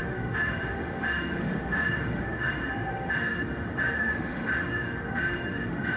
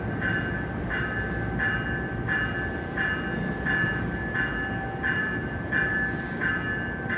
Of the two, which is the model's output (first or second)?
first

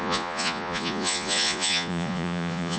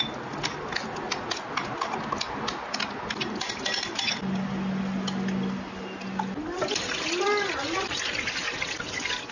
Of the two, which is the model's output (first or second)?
first